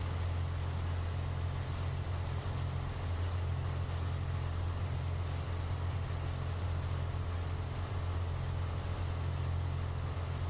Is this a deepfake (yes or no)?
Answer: no